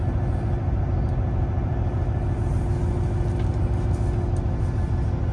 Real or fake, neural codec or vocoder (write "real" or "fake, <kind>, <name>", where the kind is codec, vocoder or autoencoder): real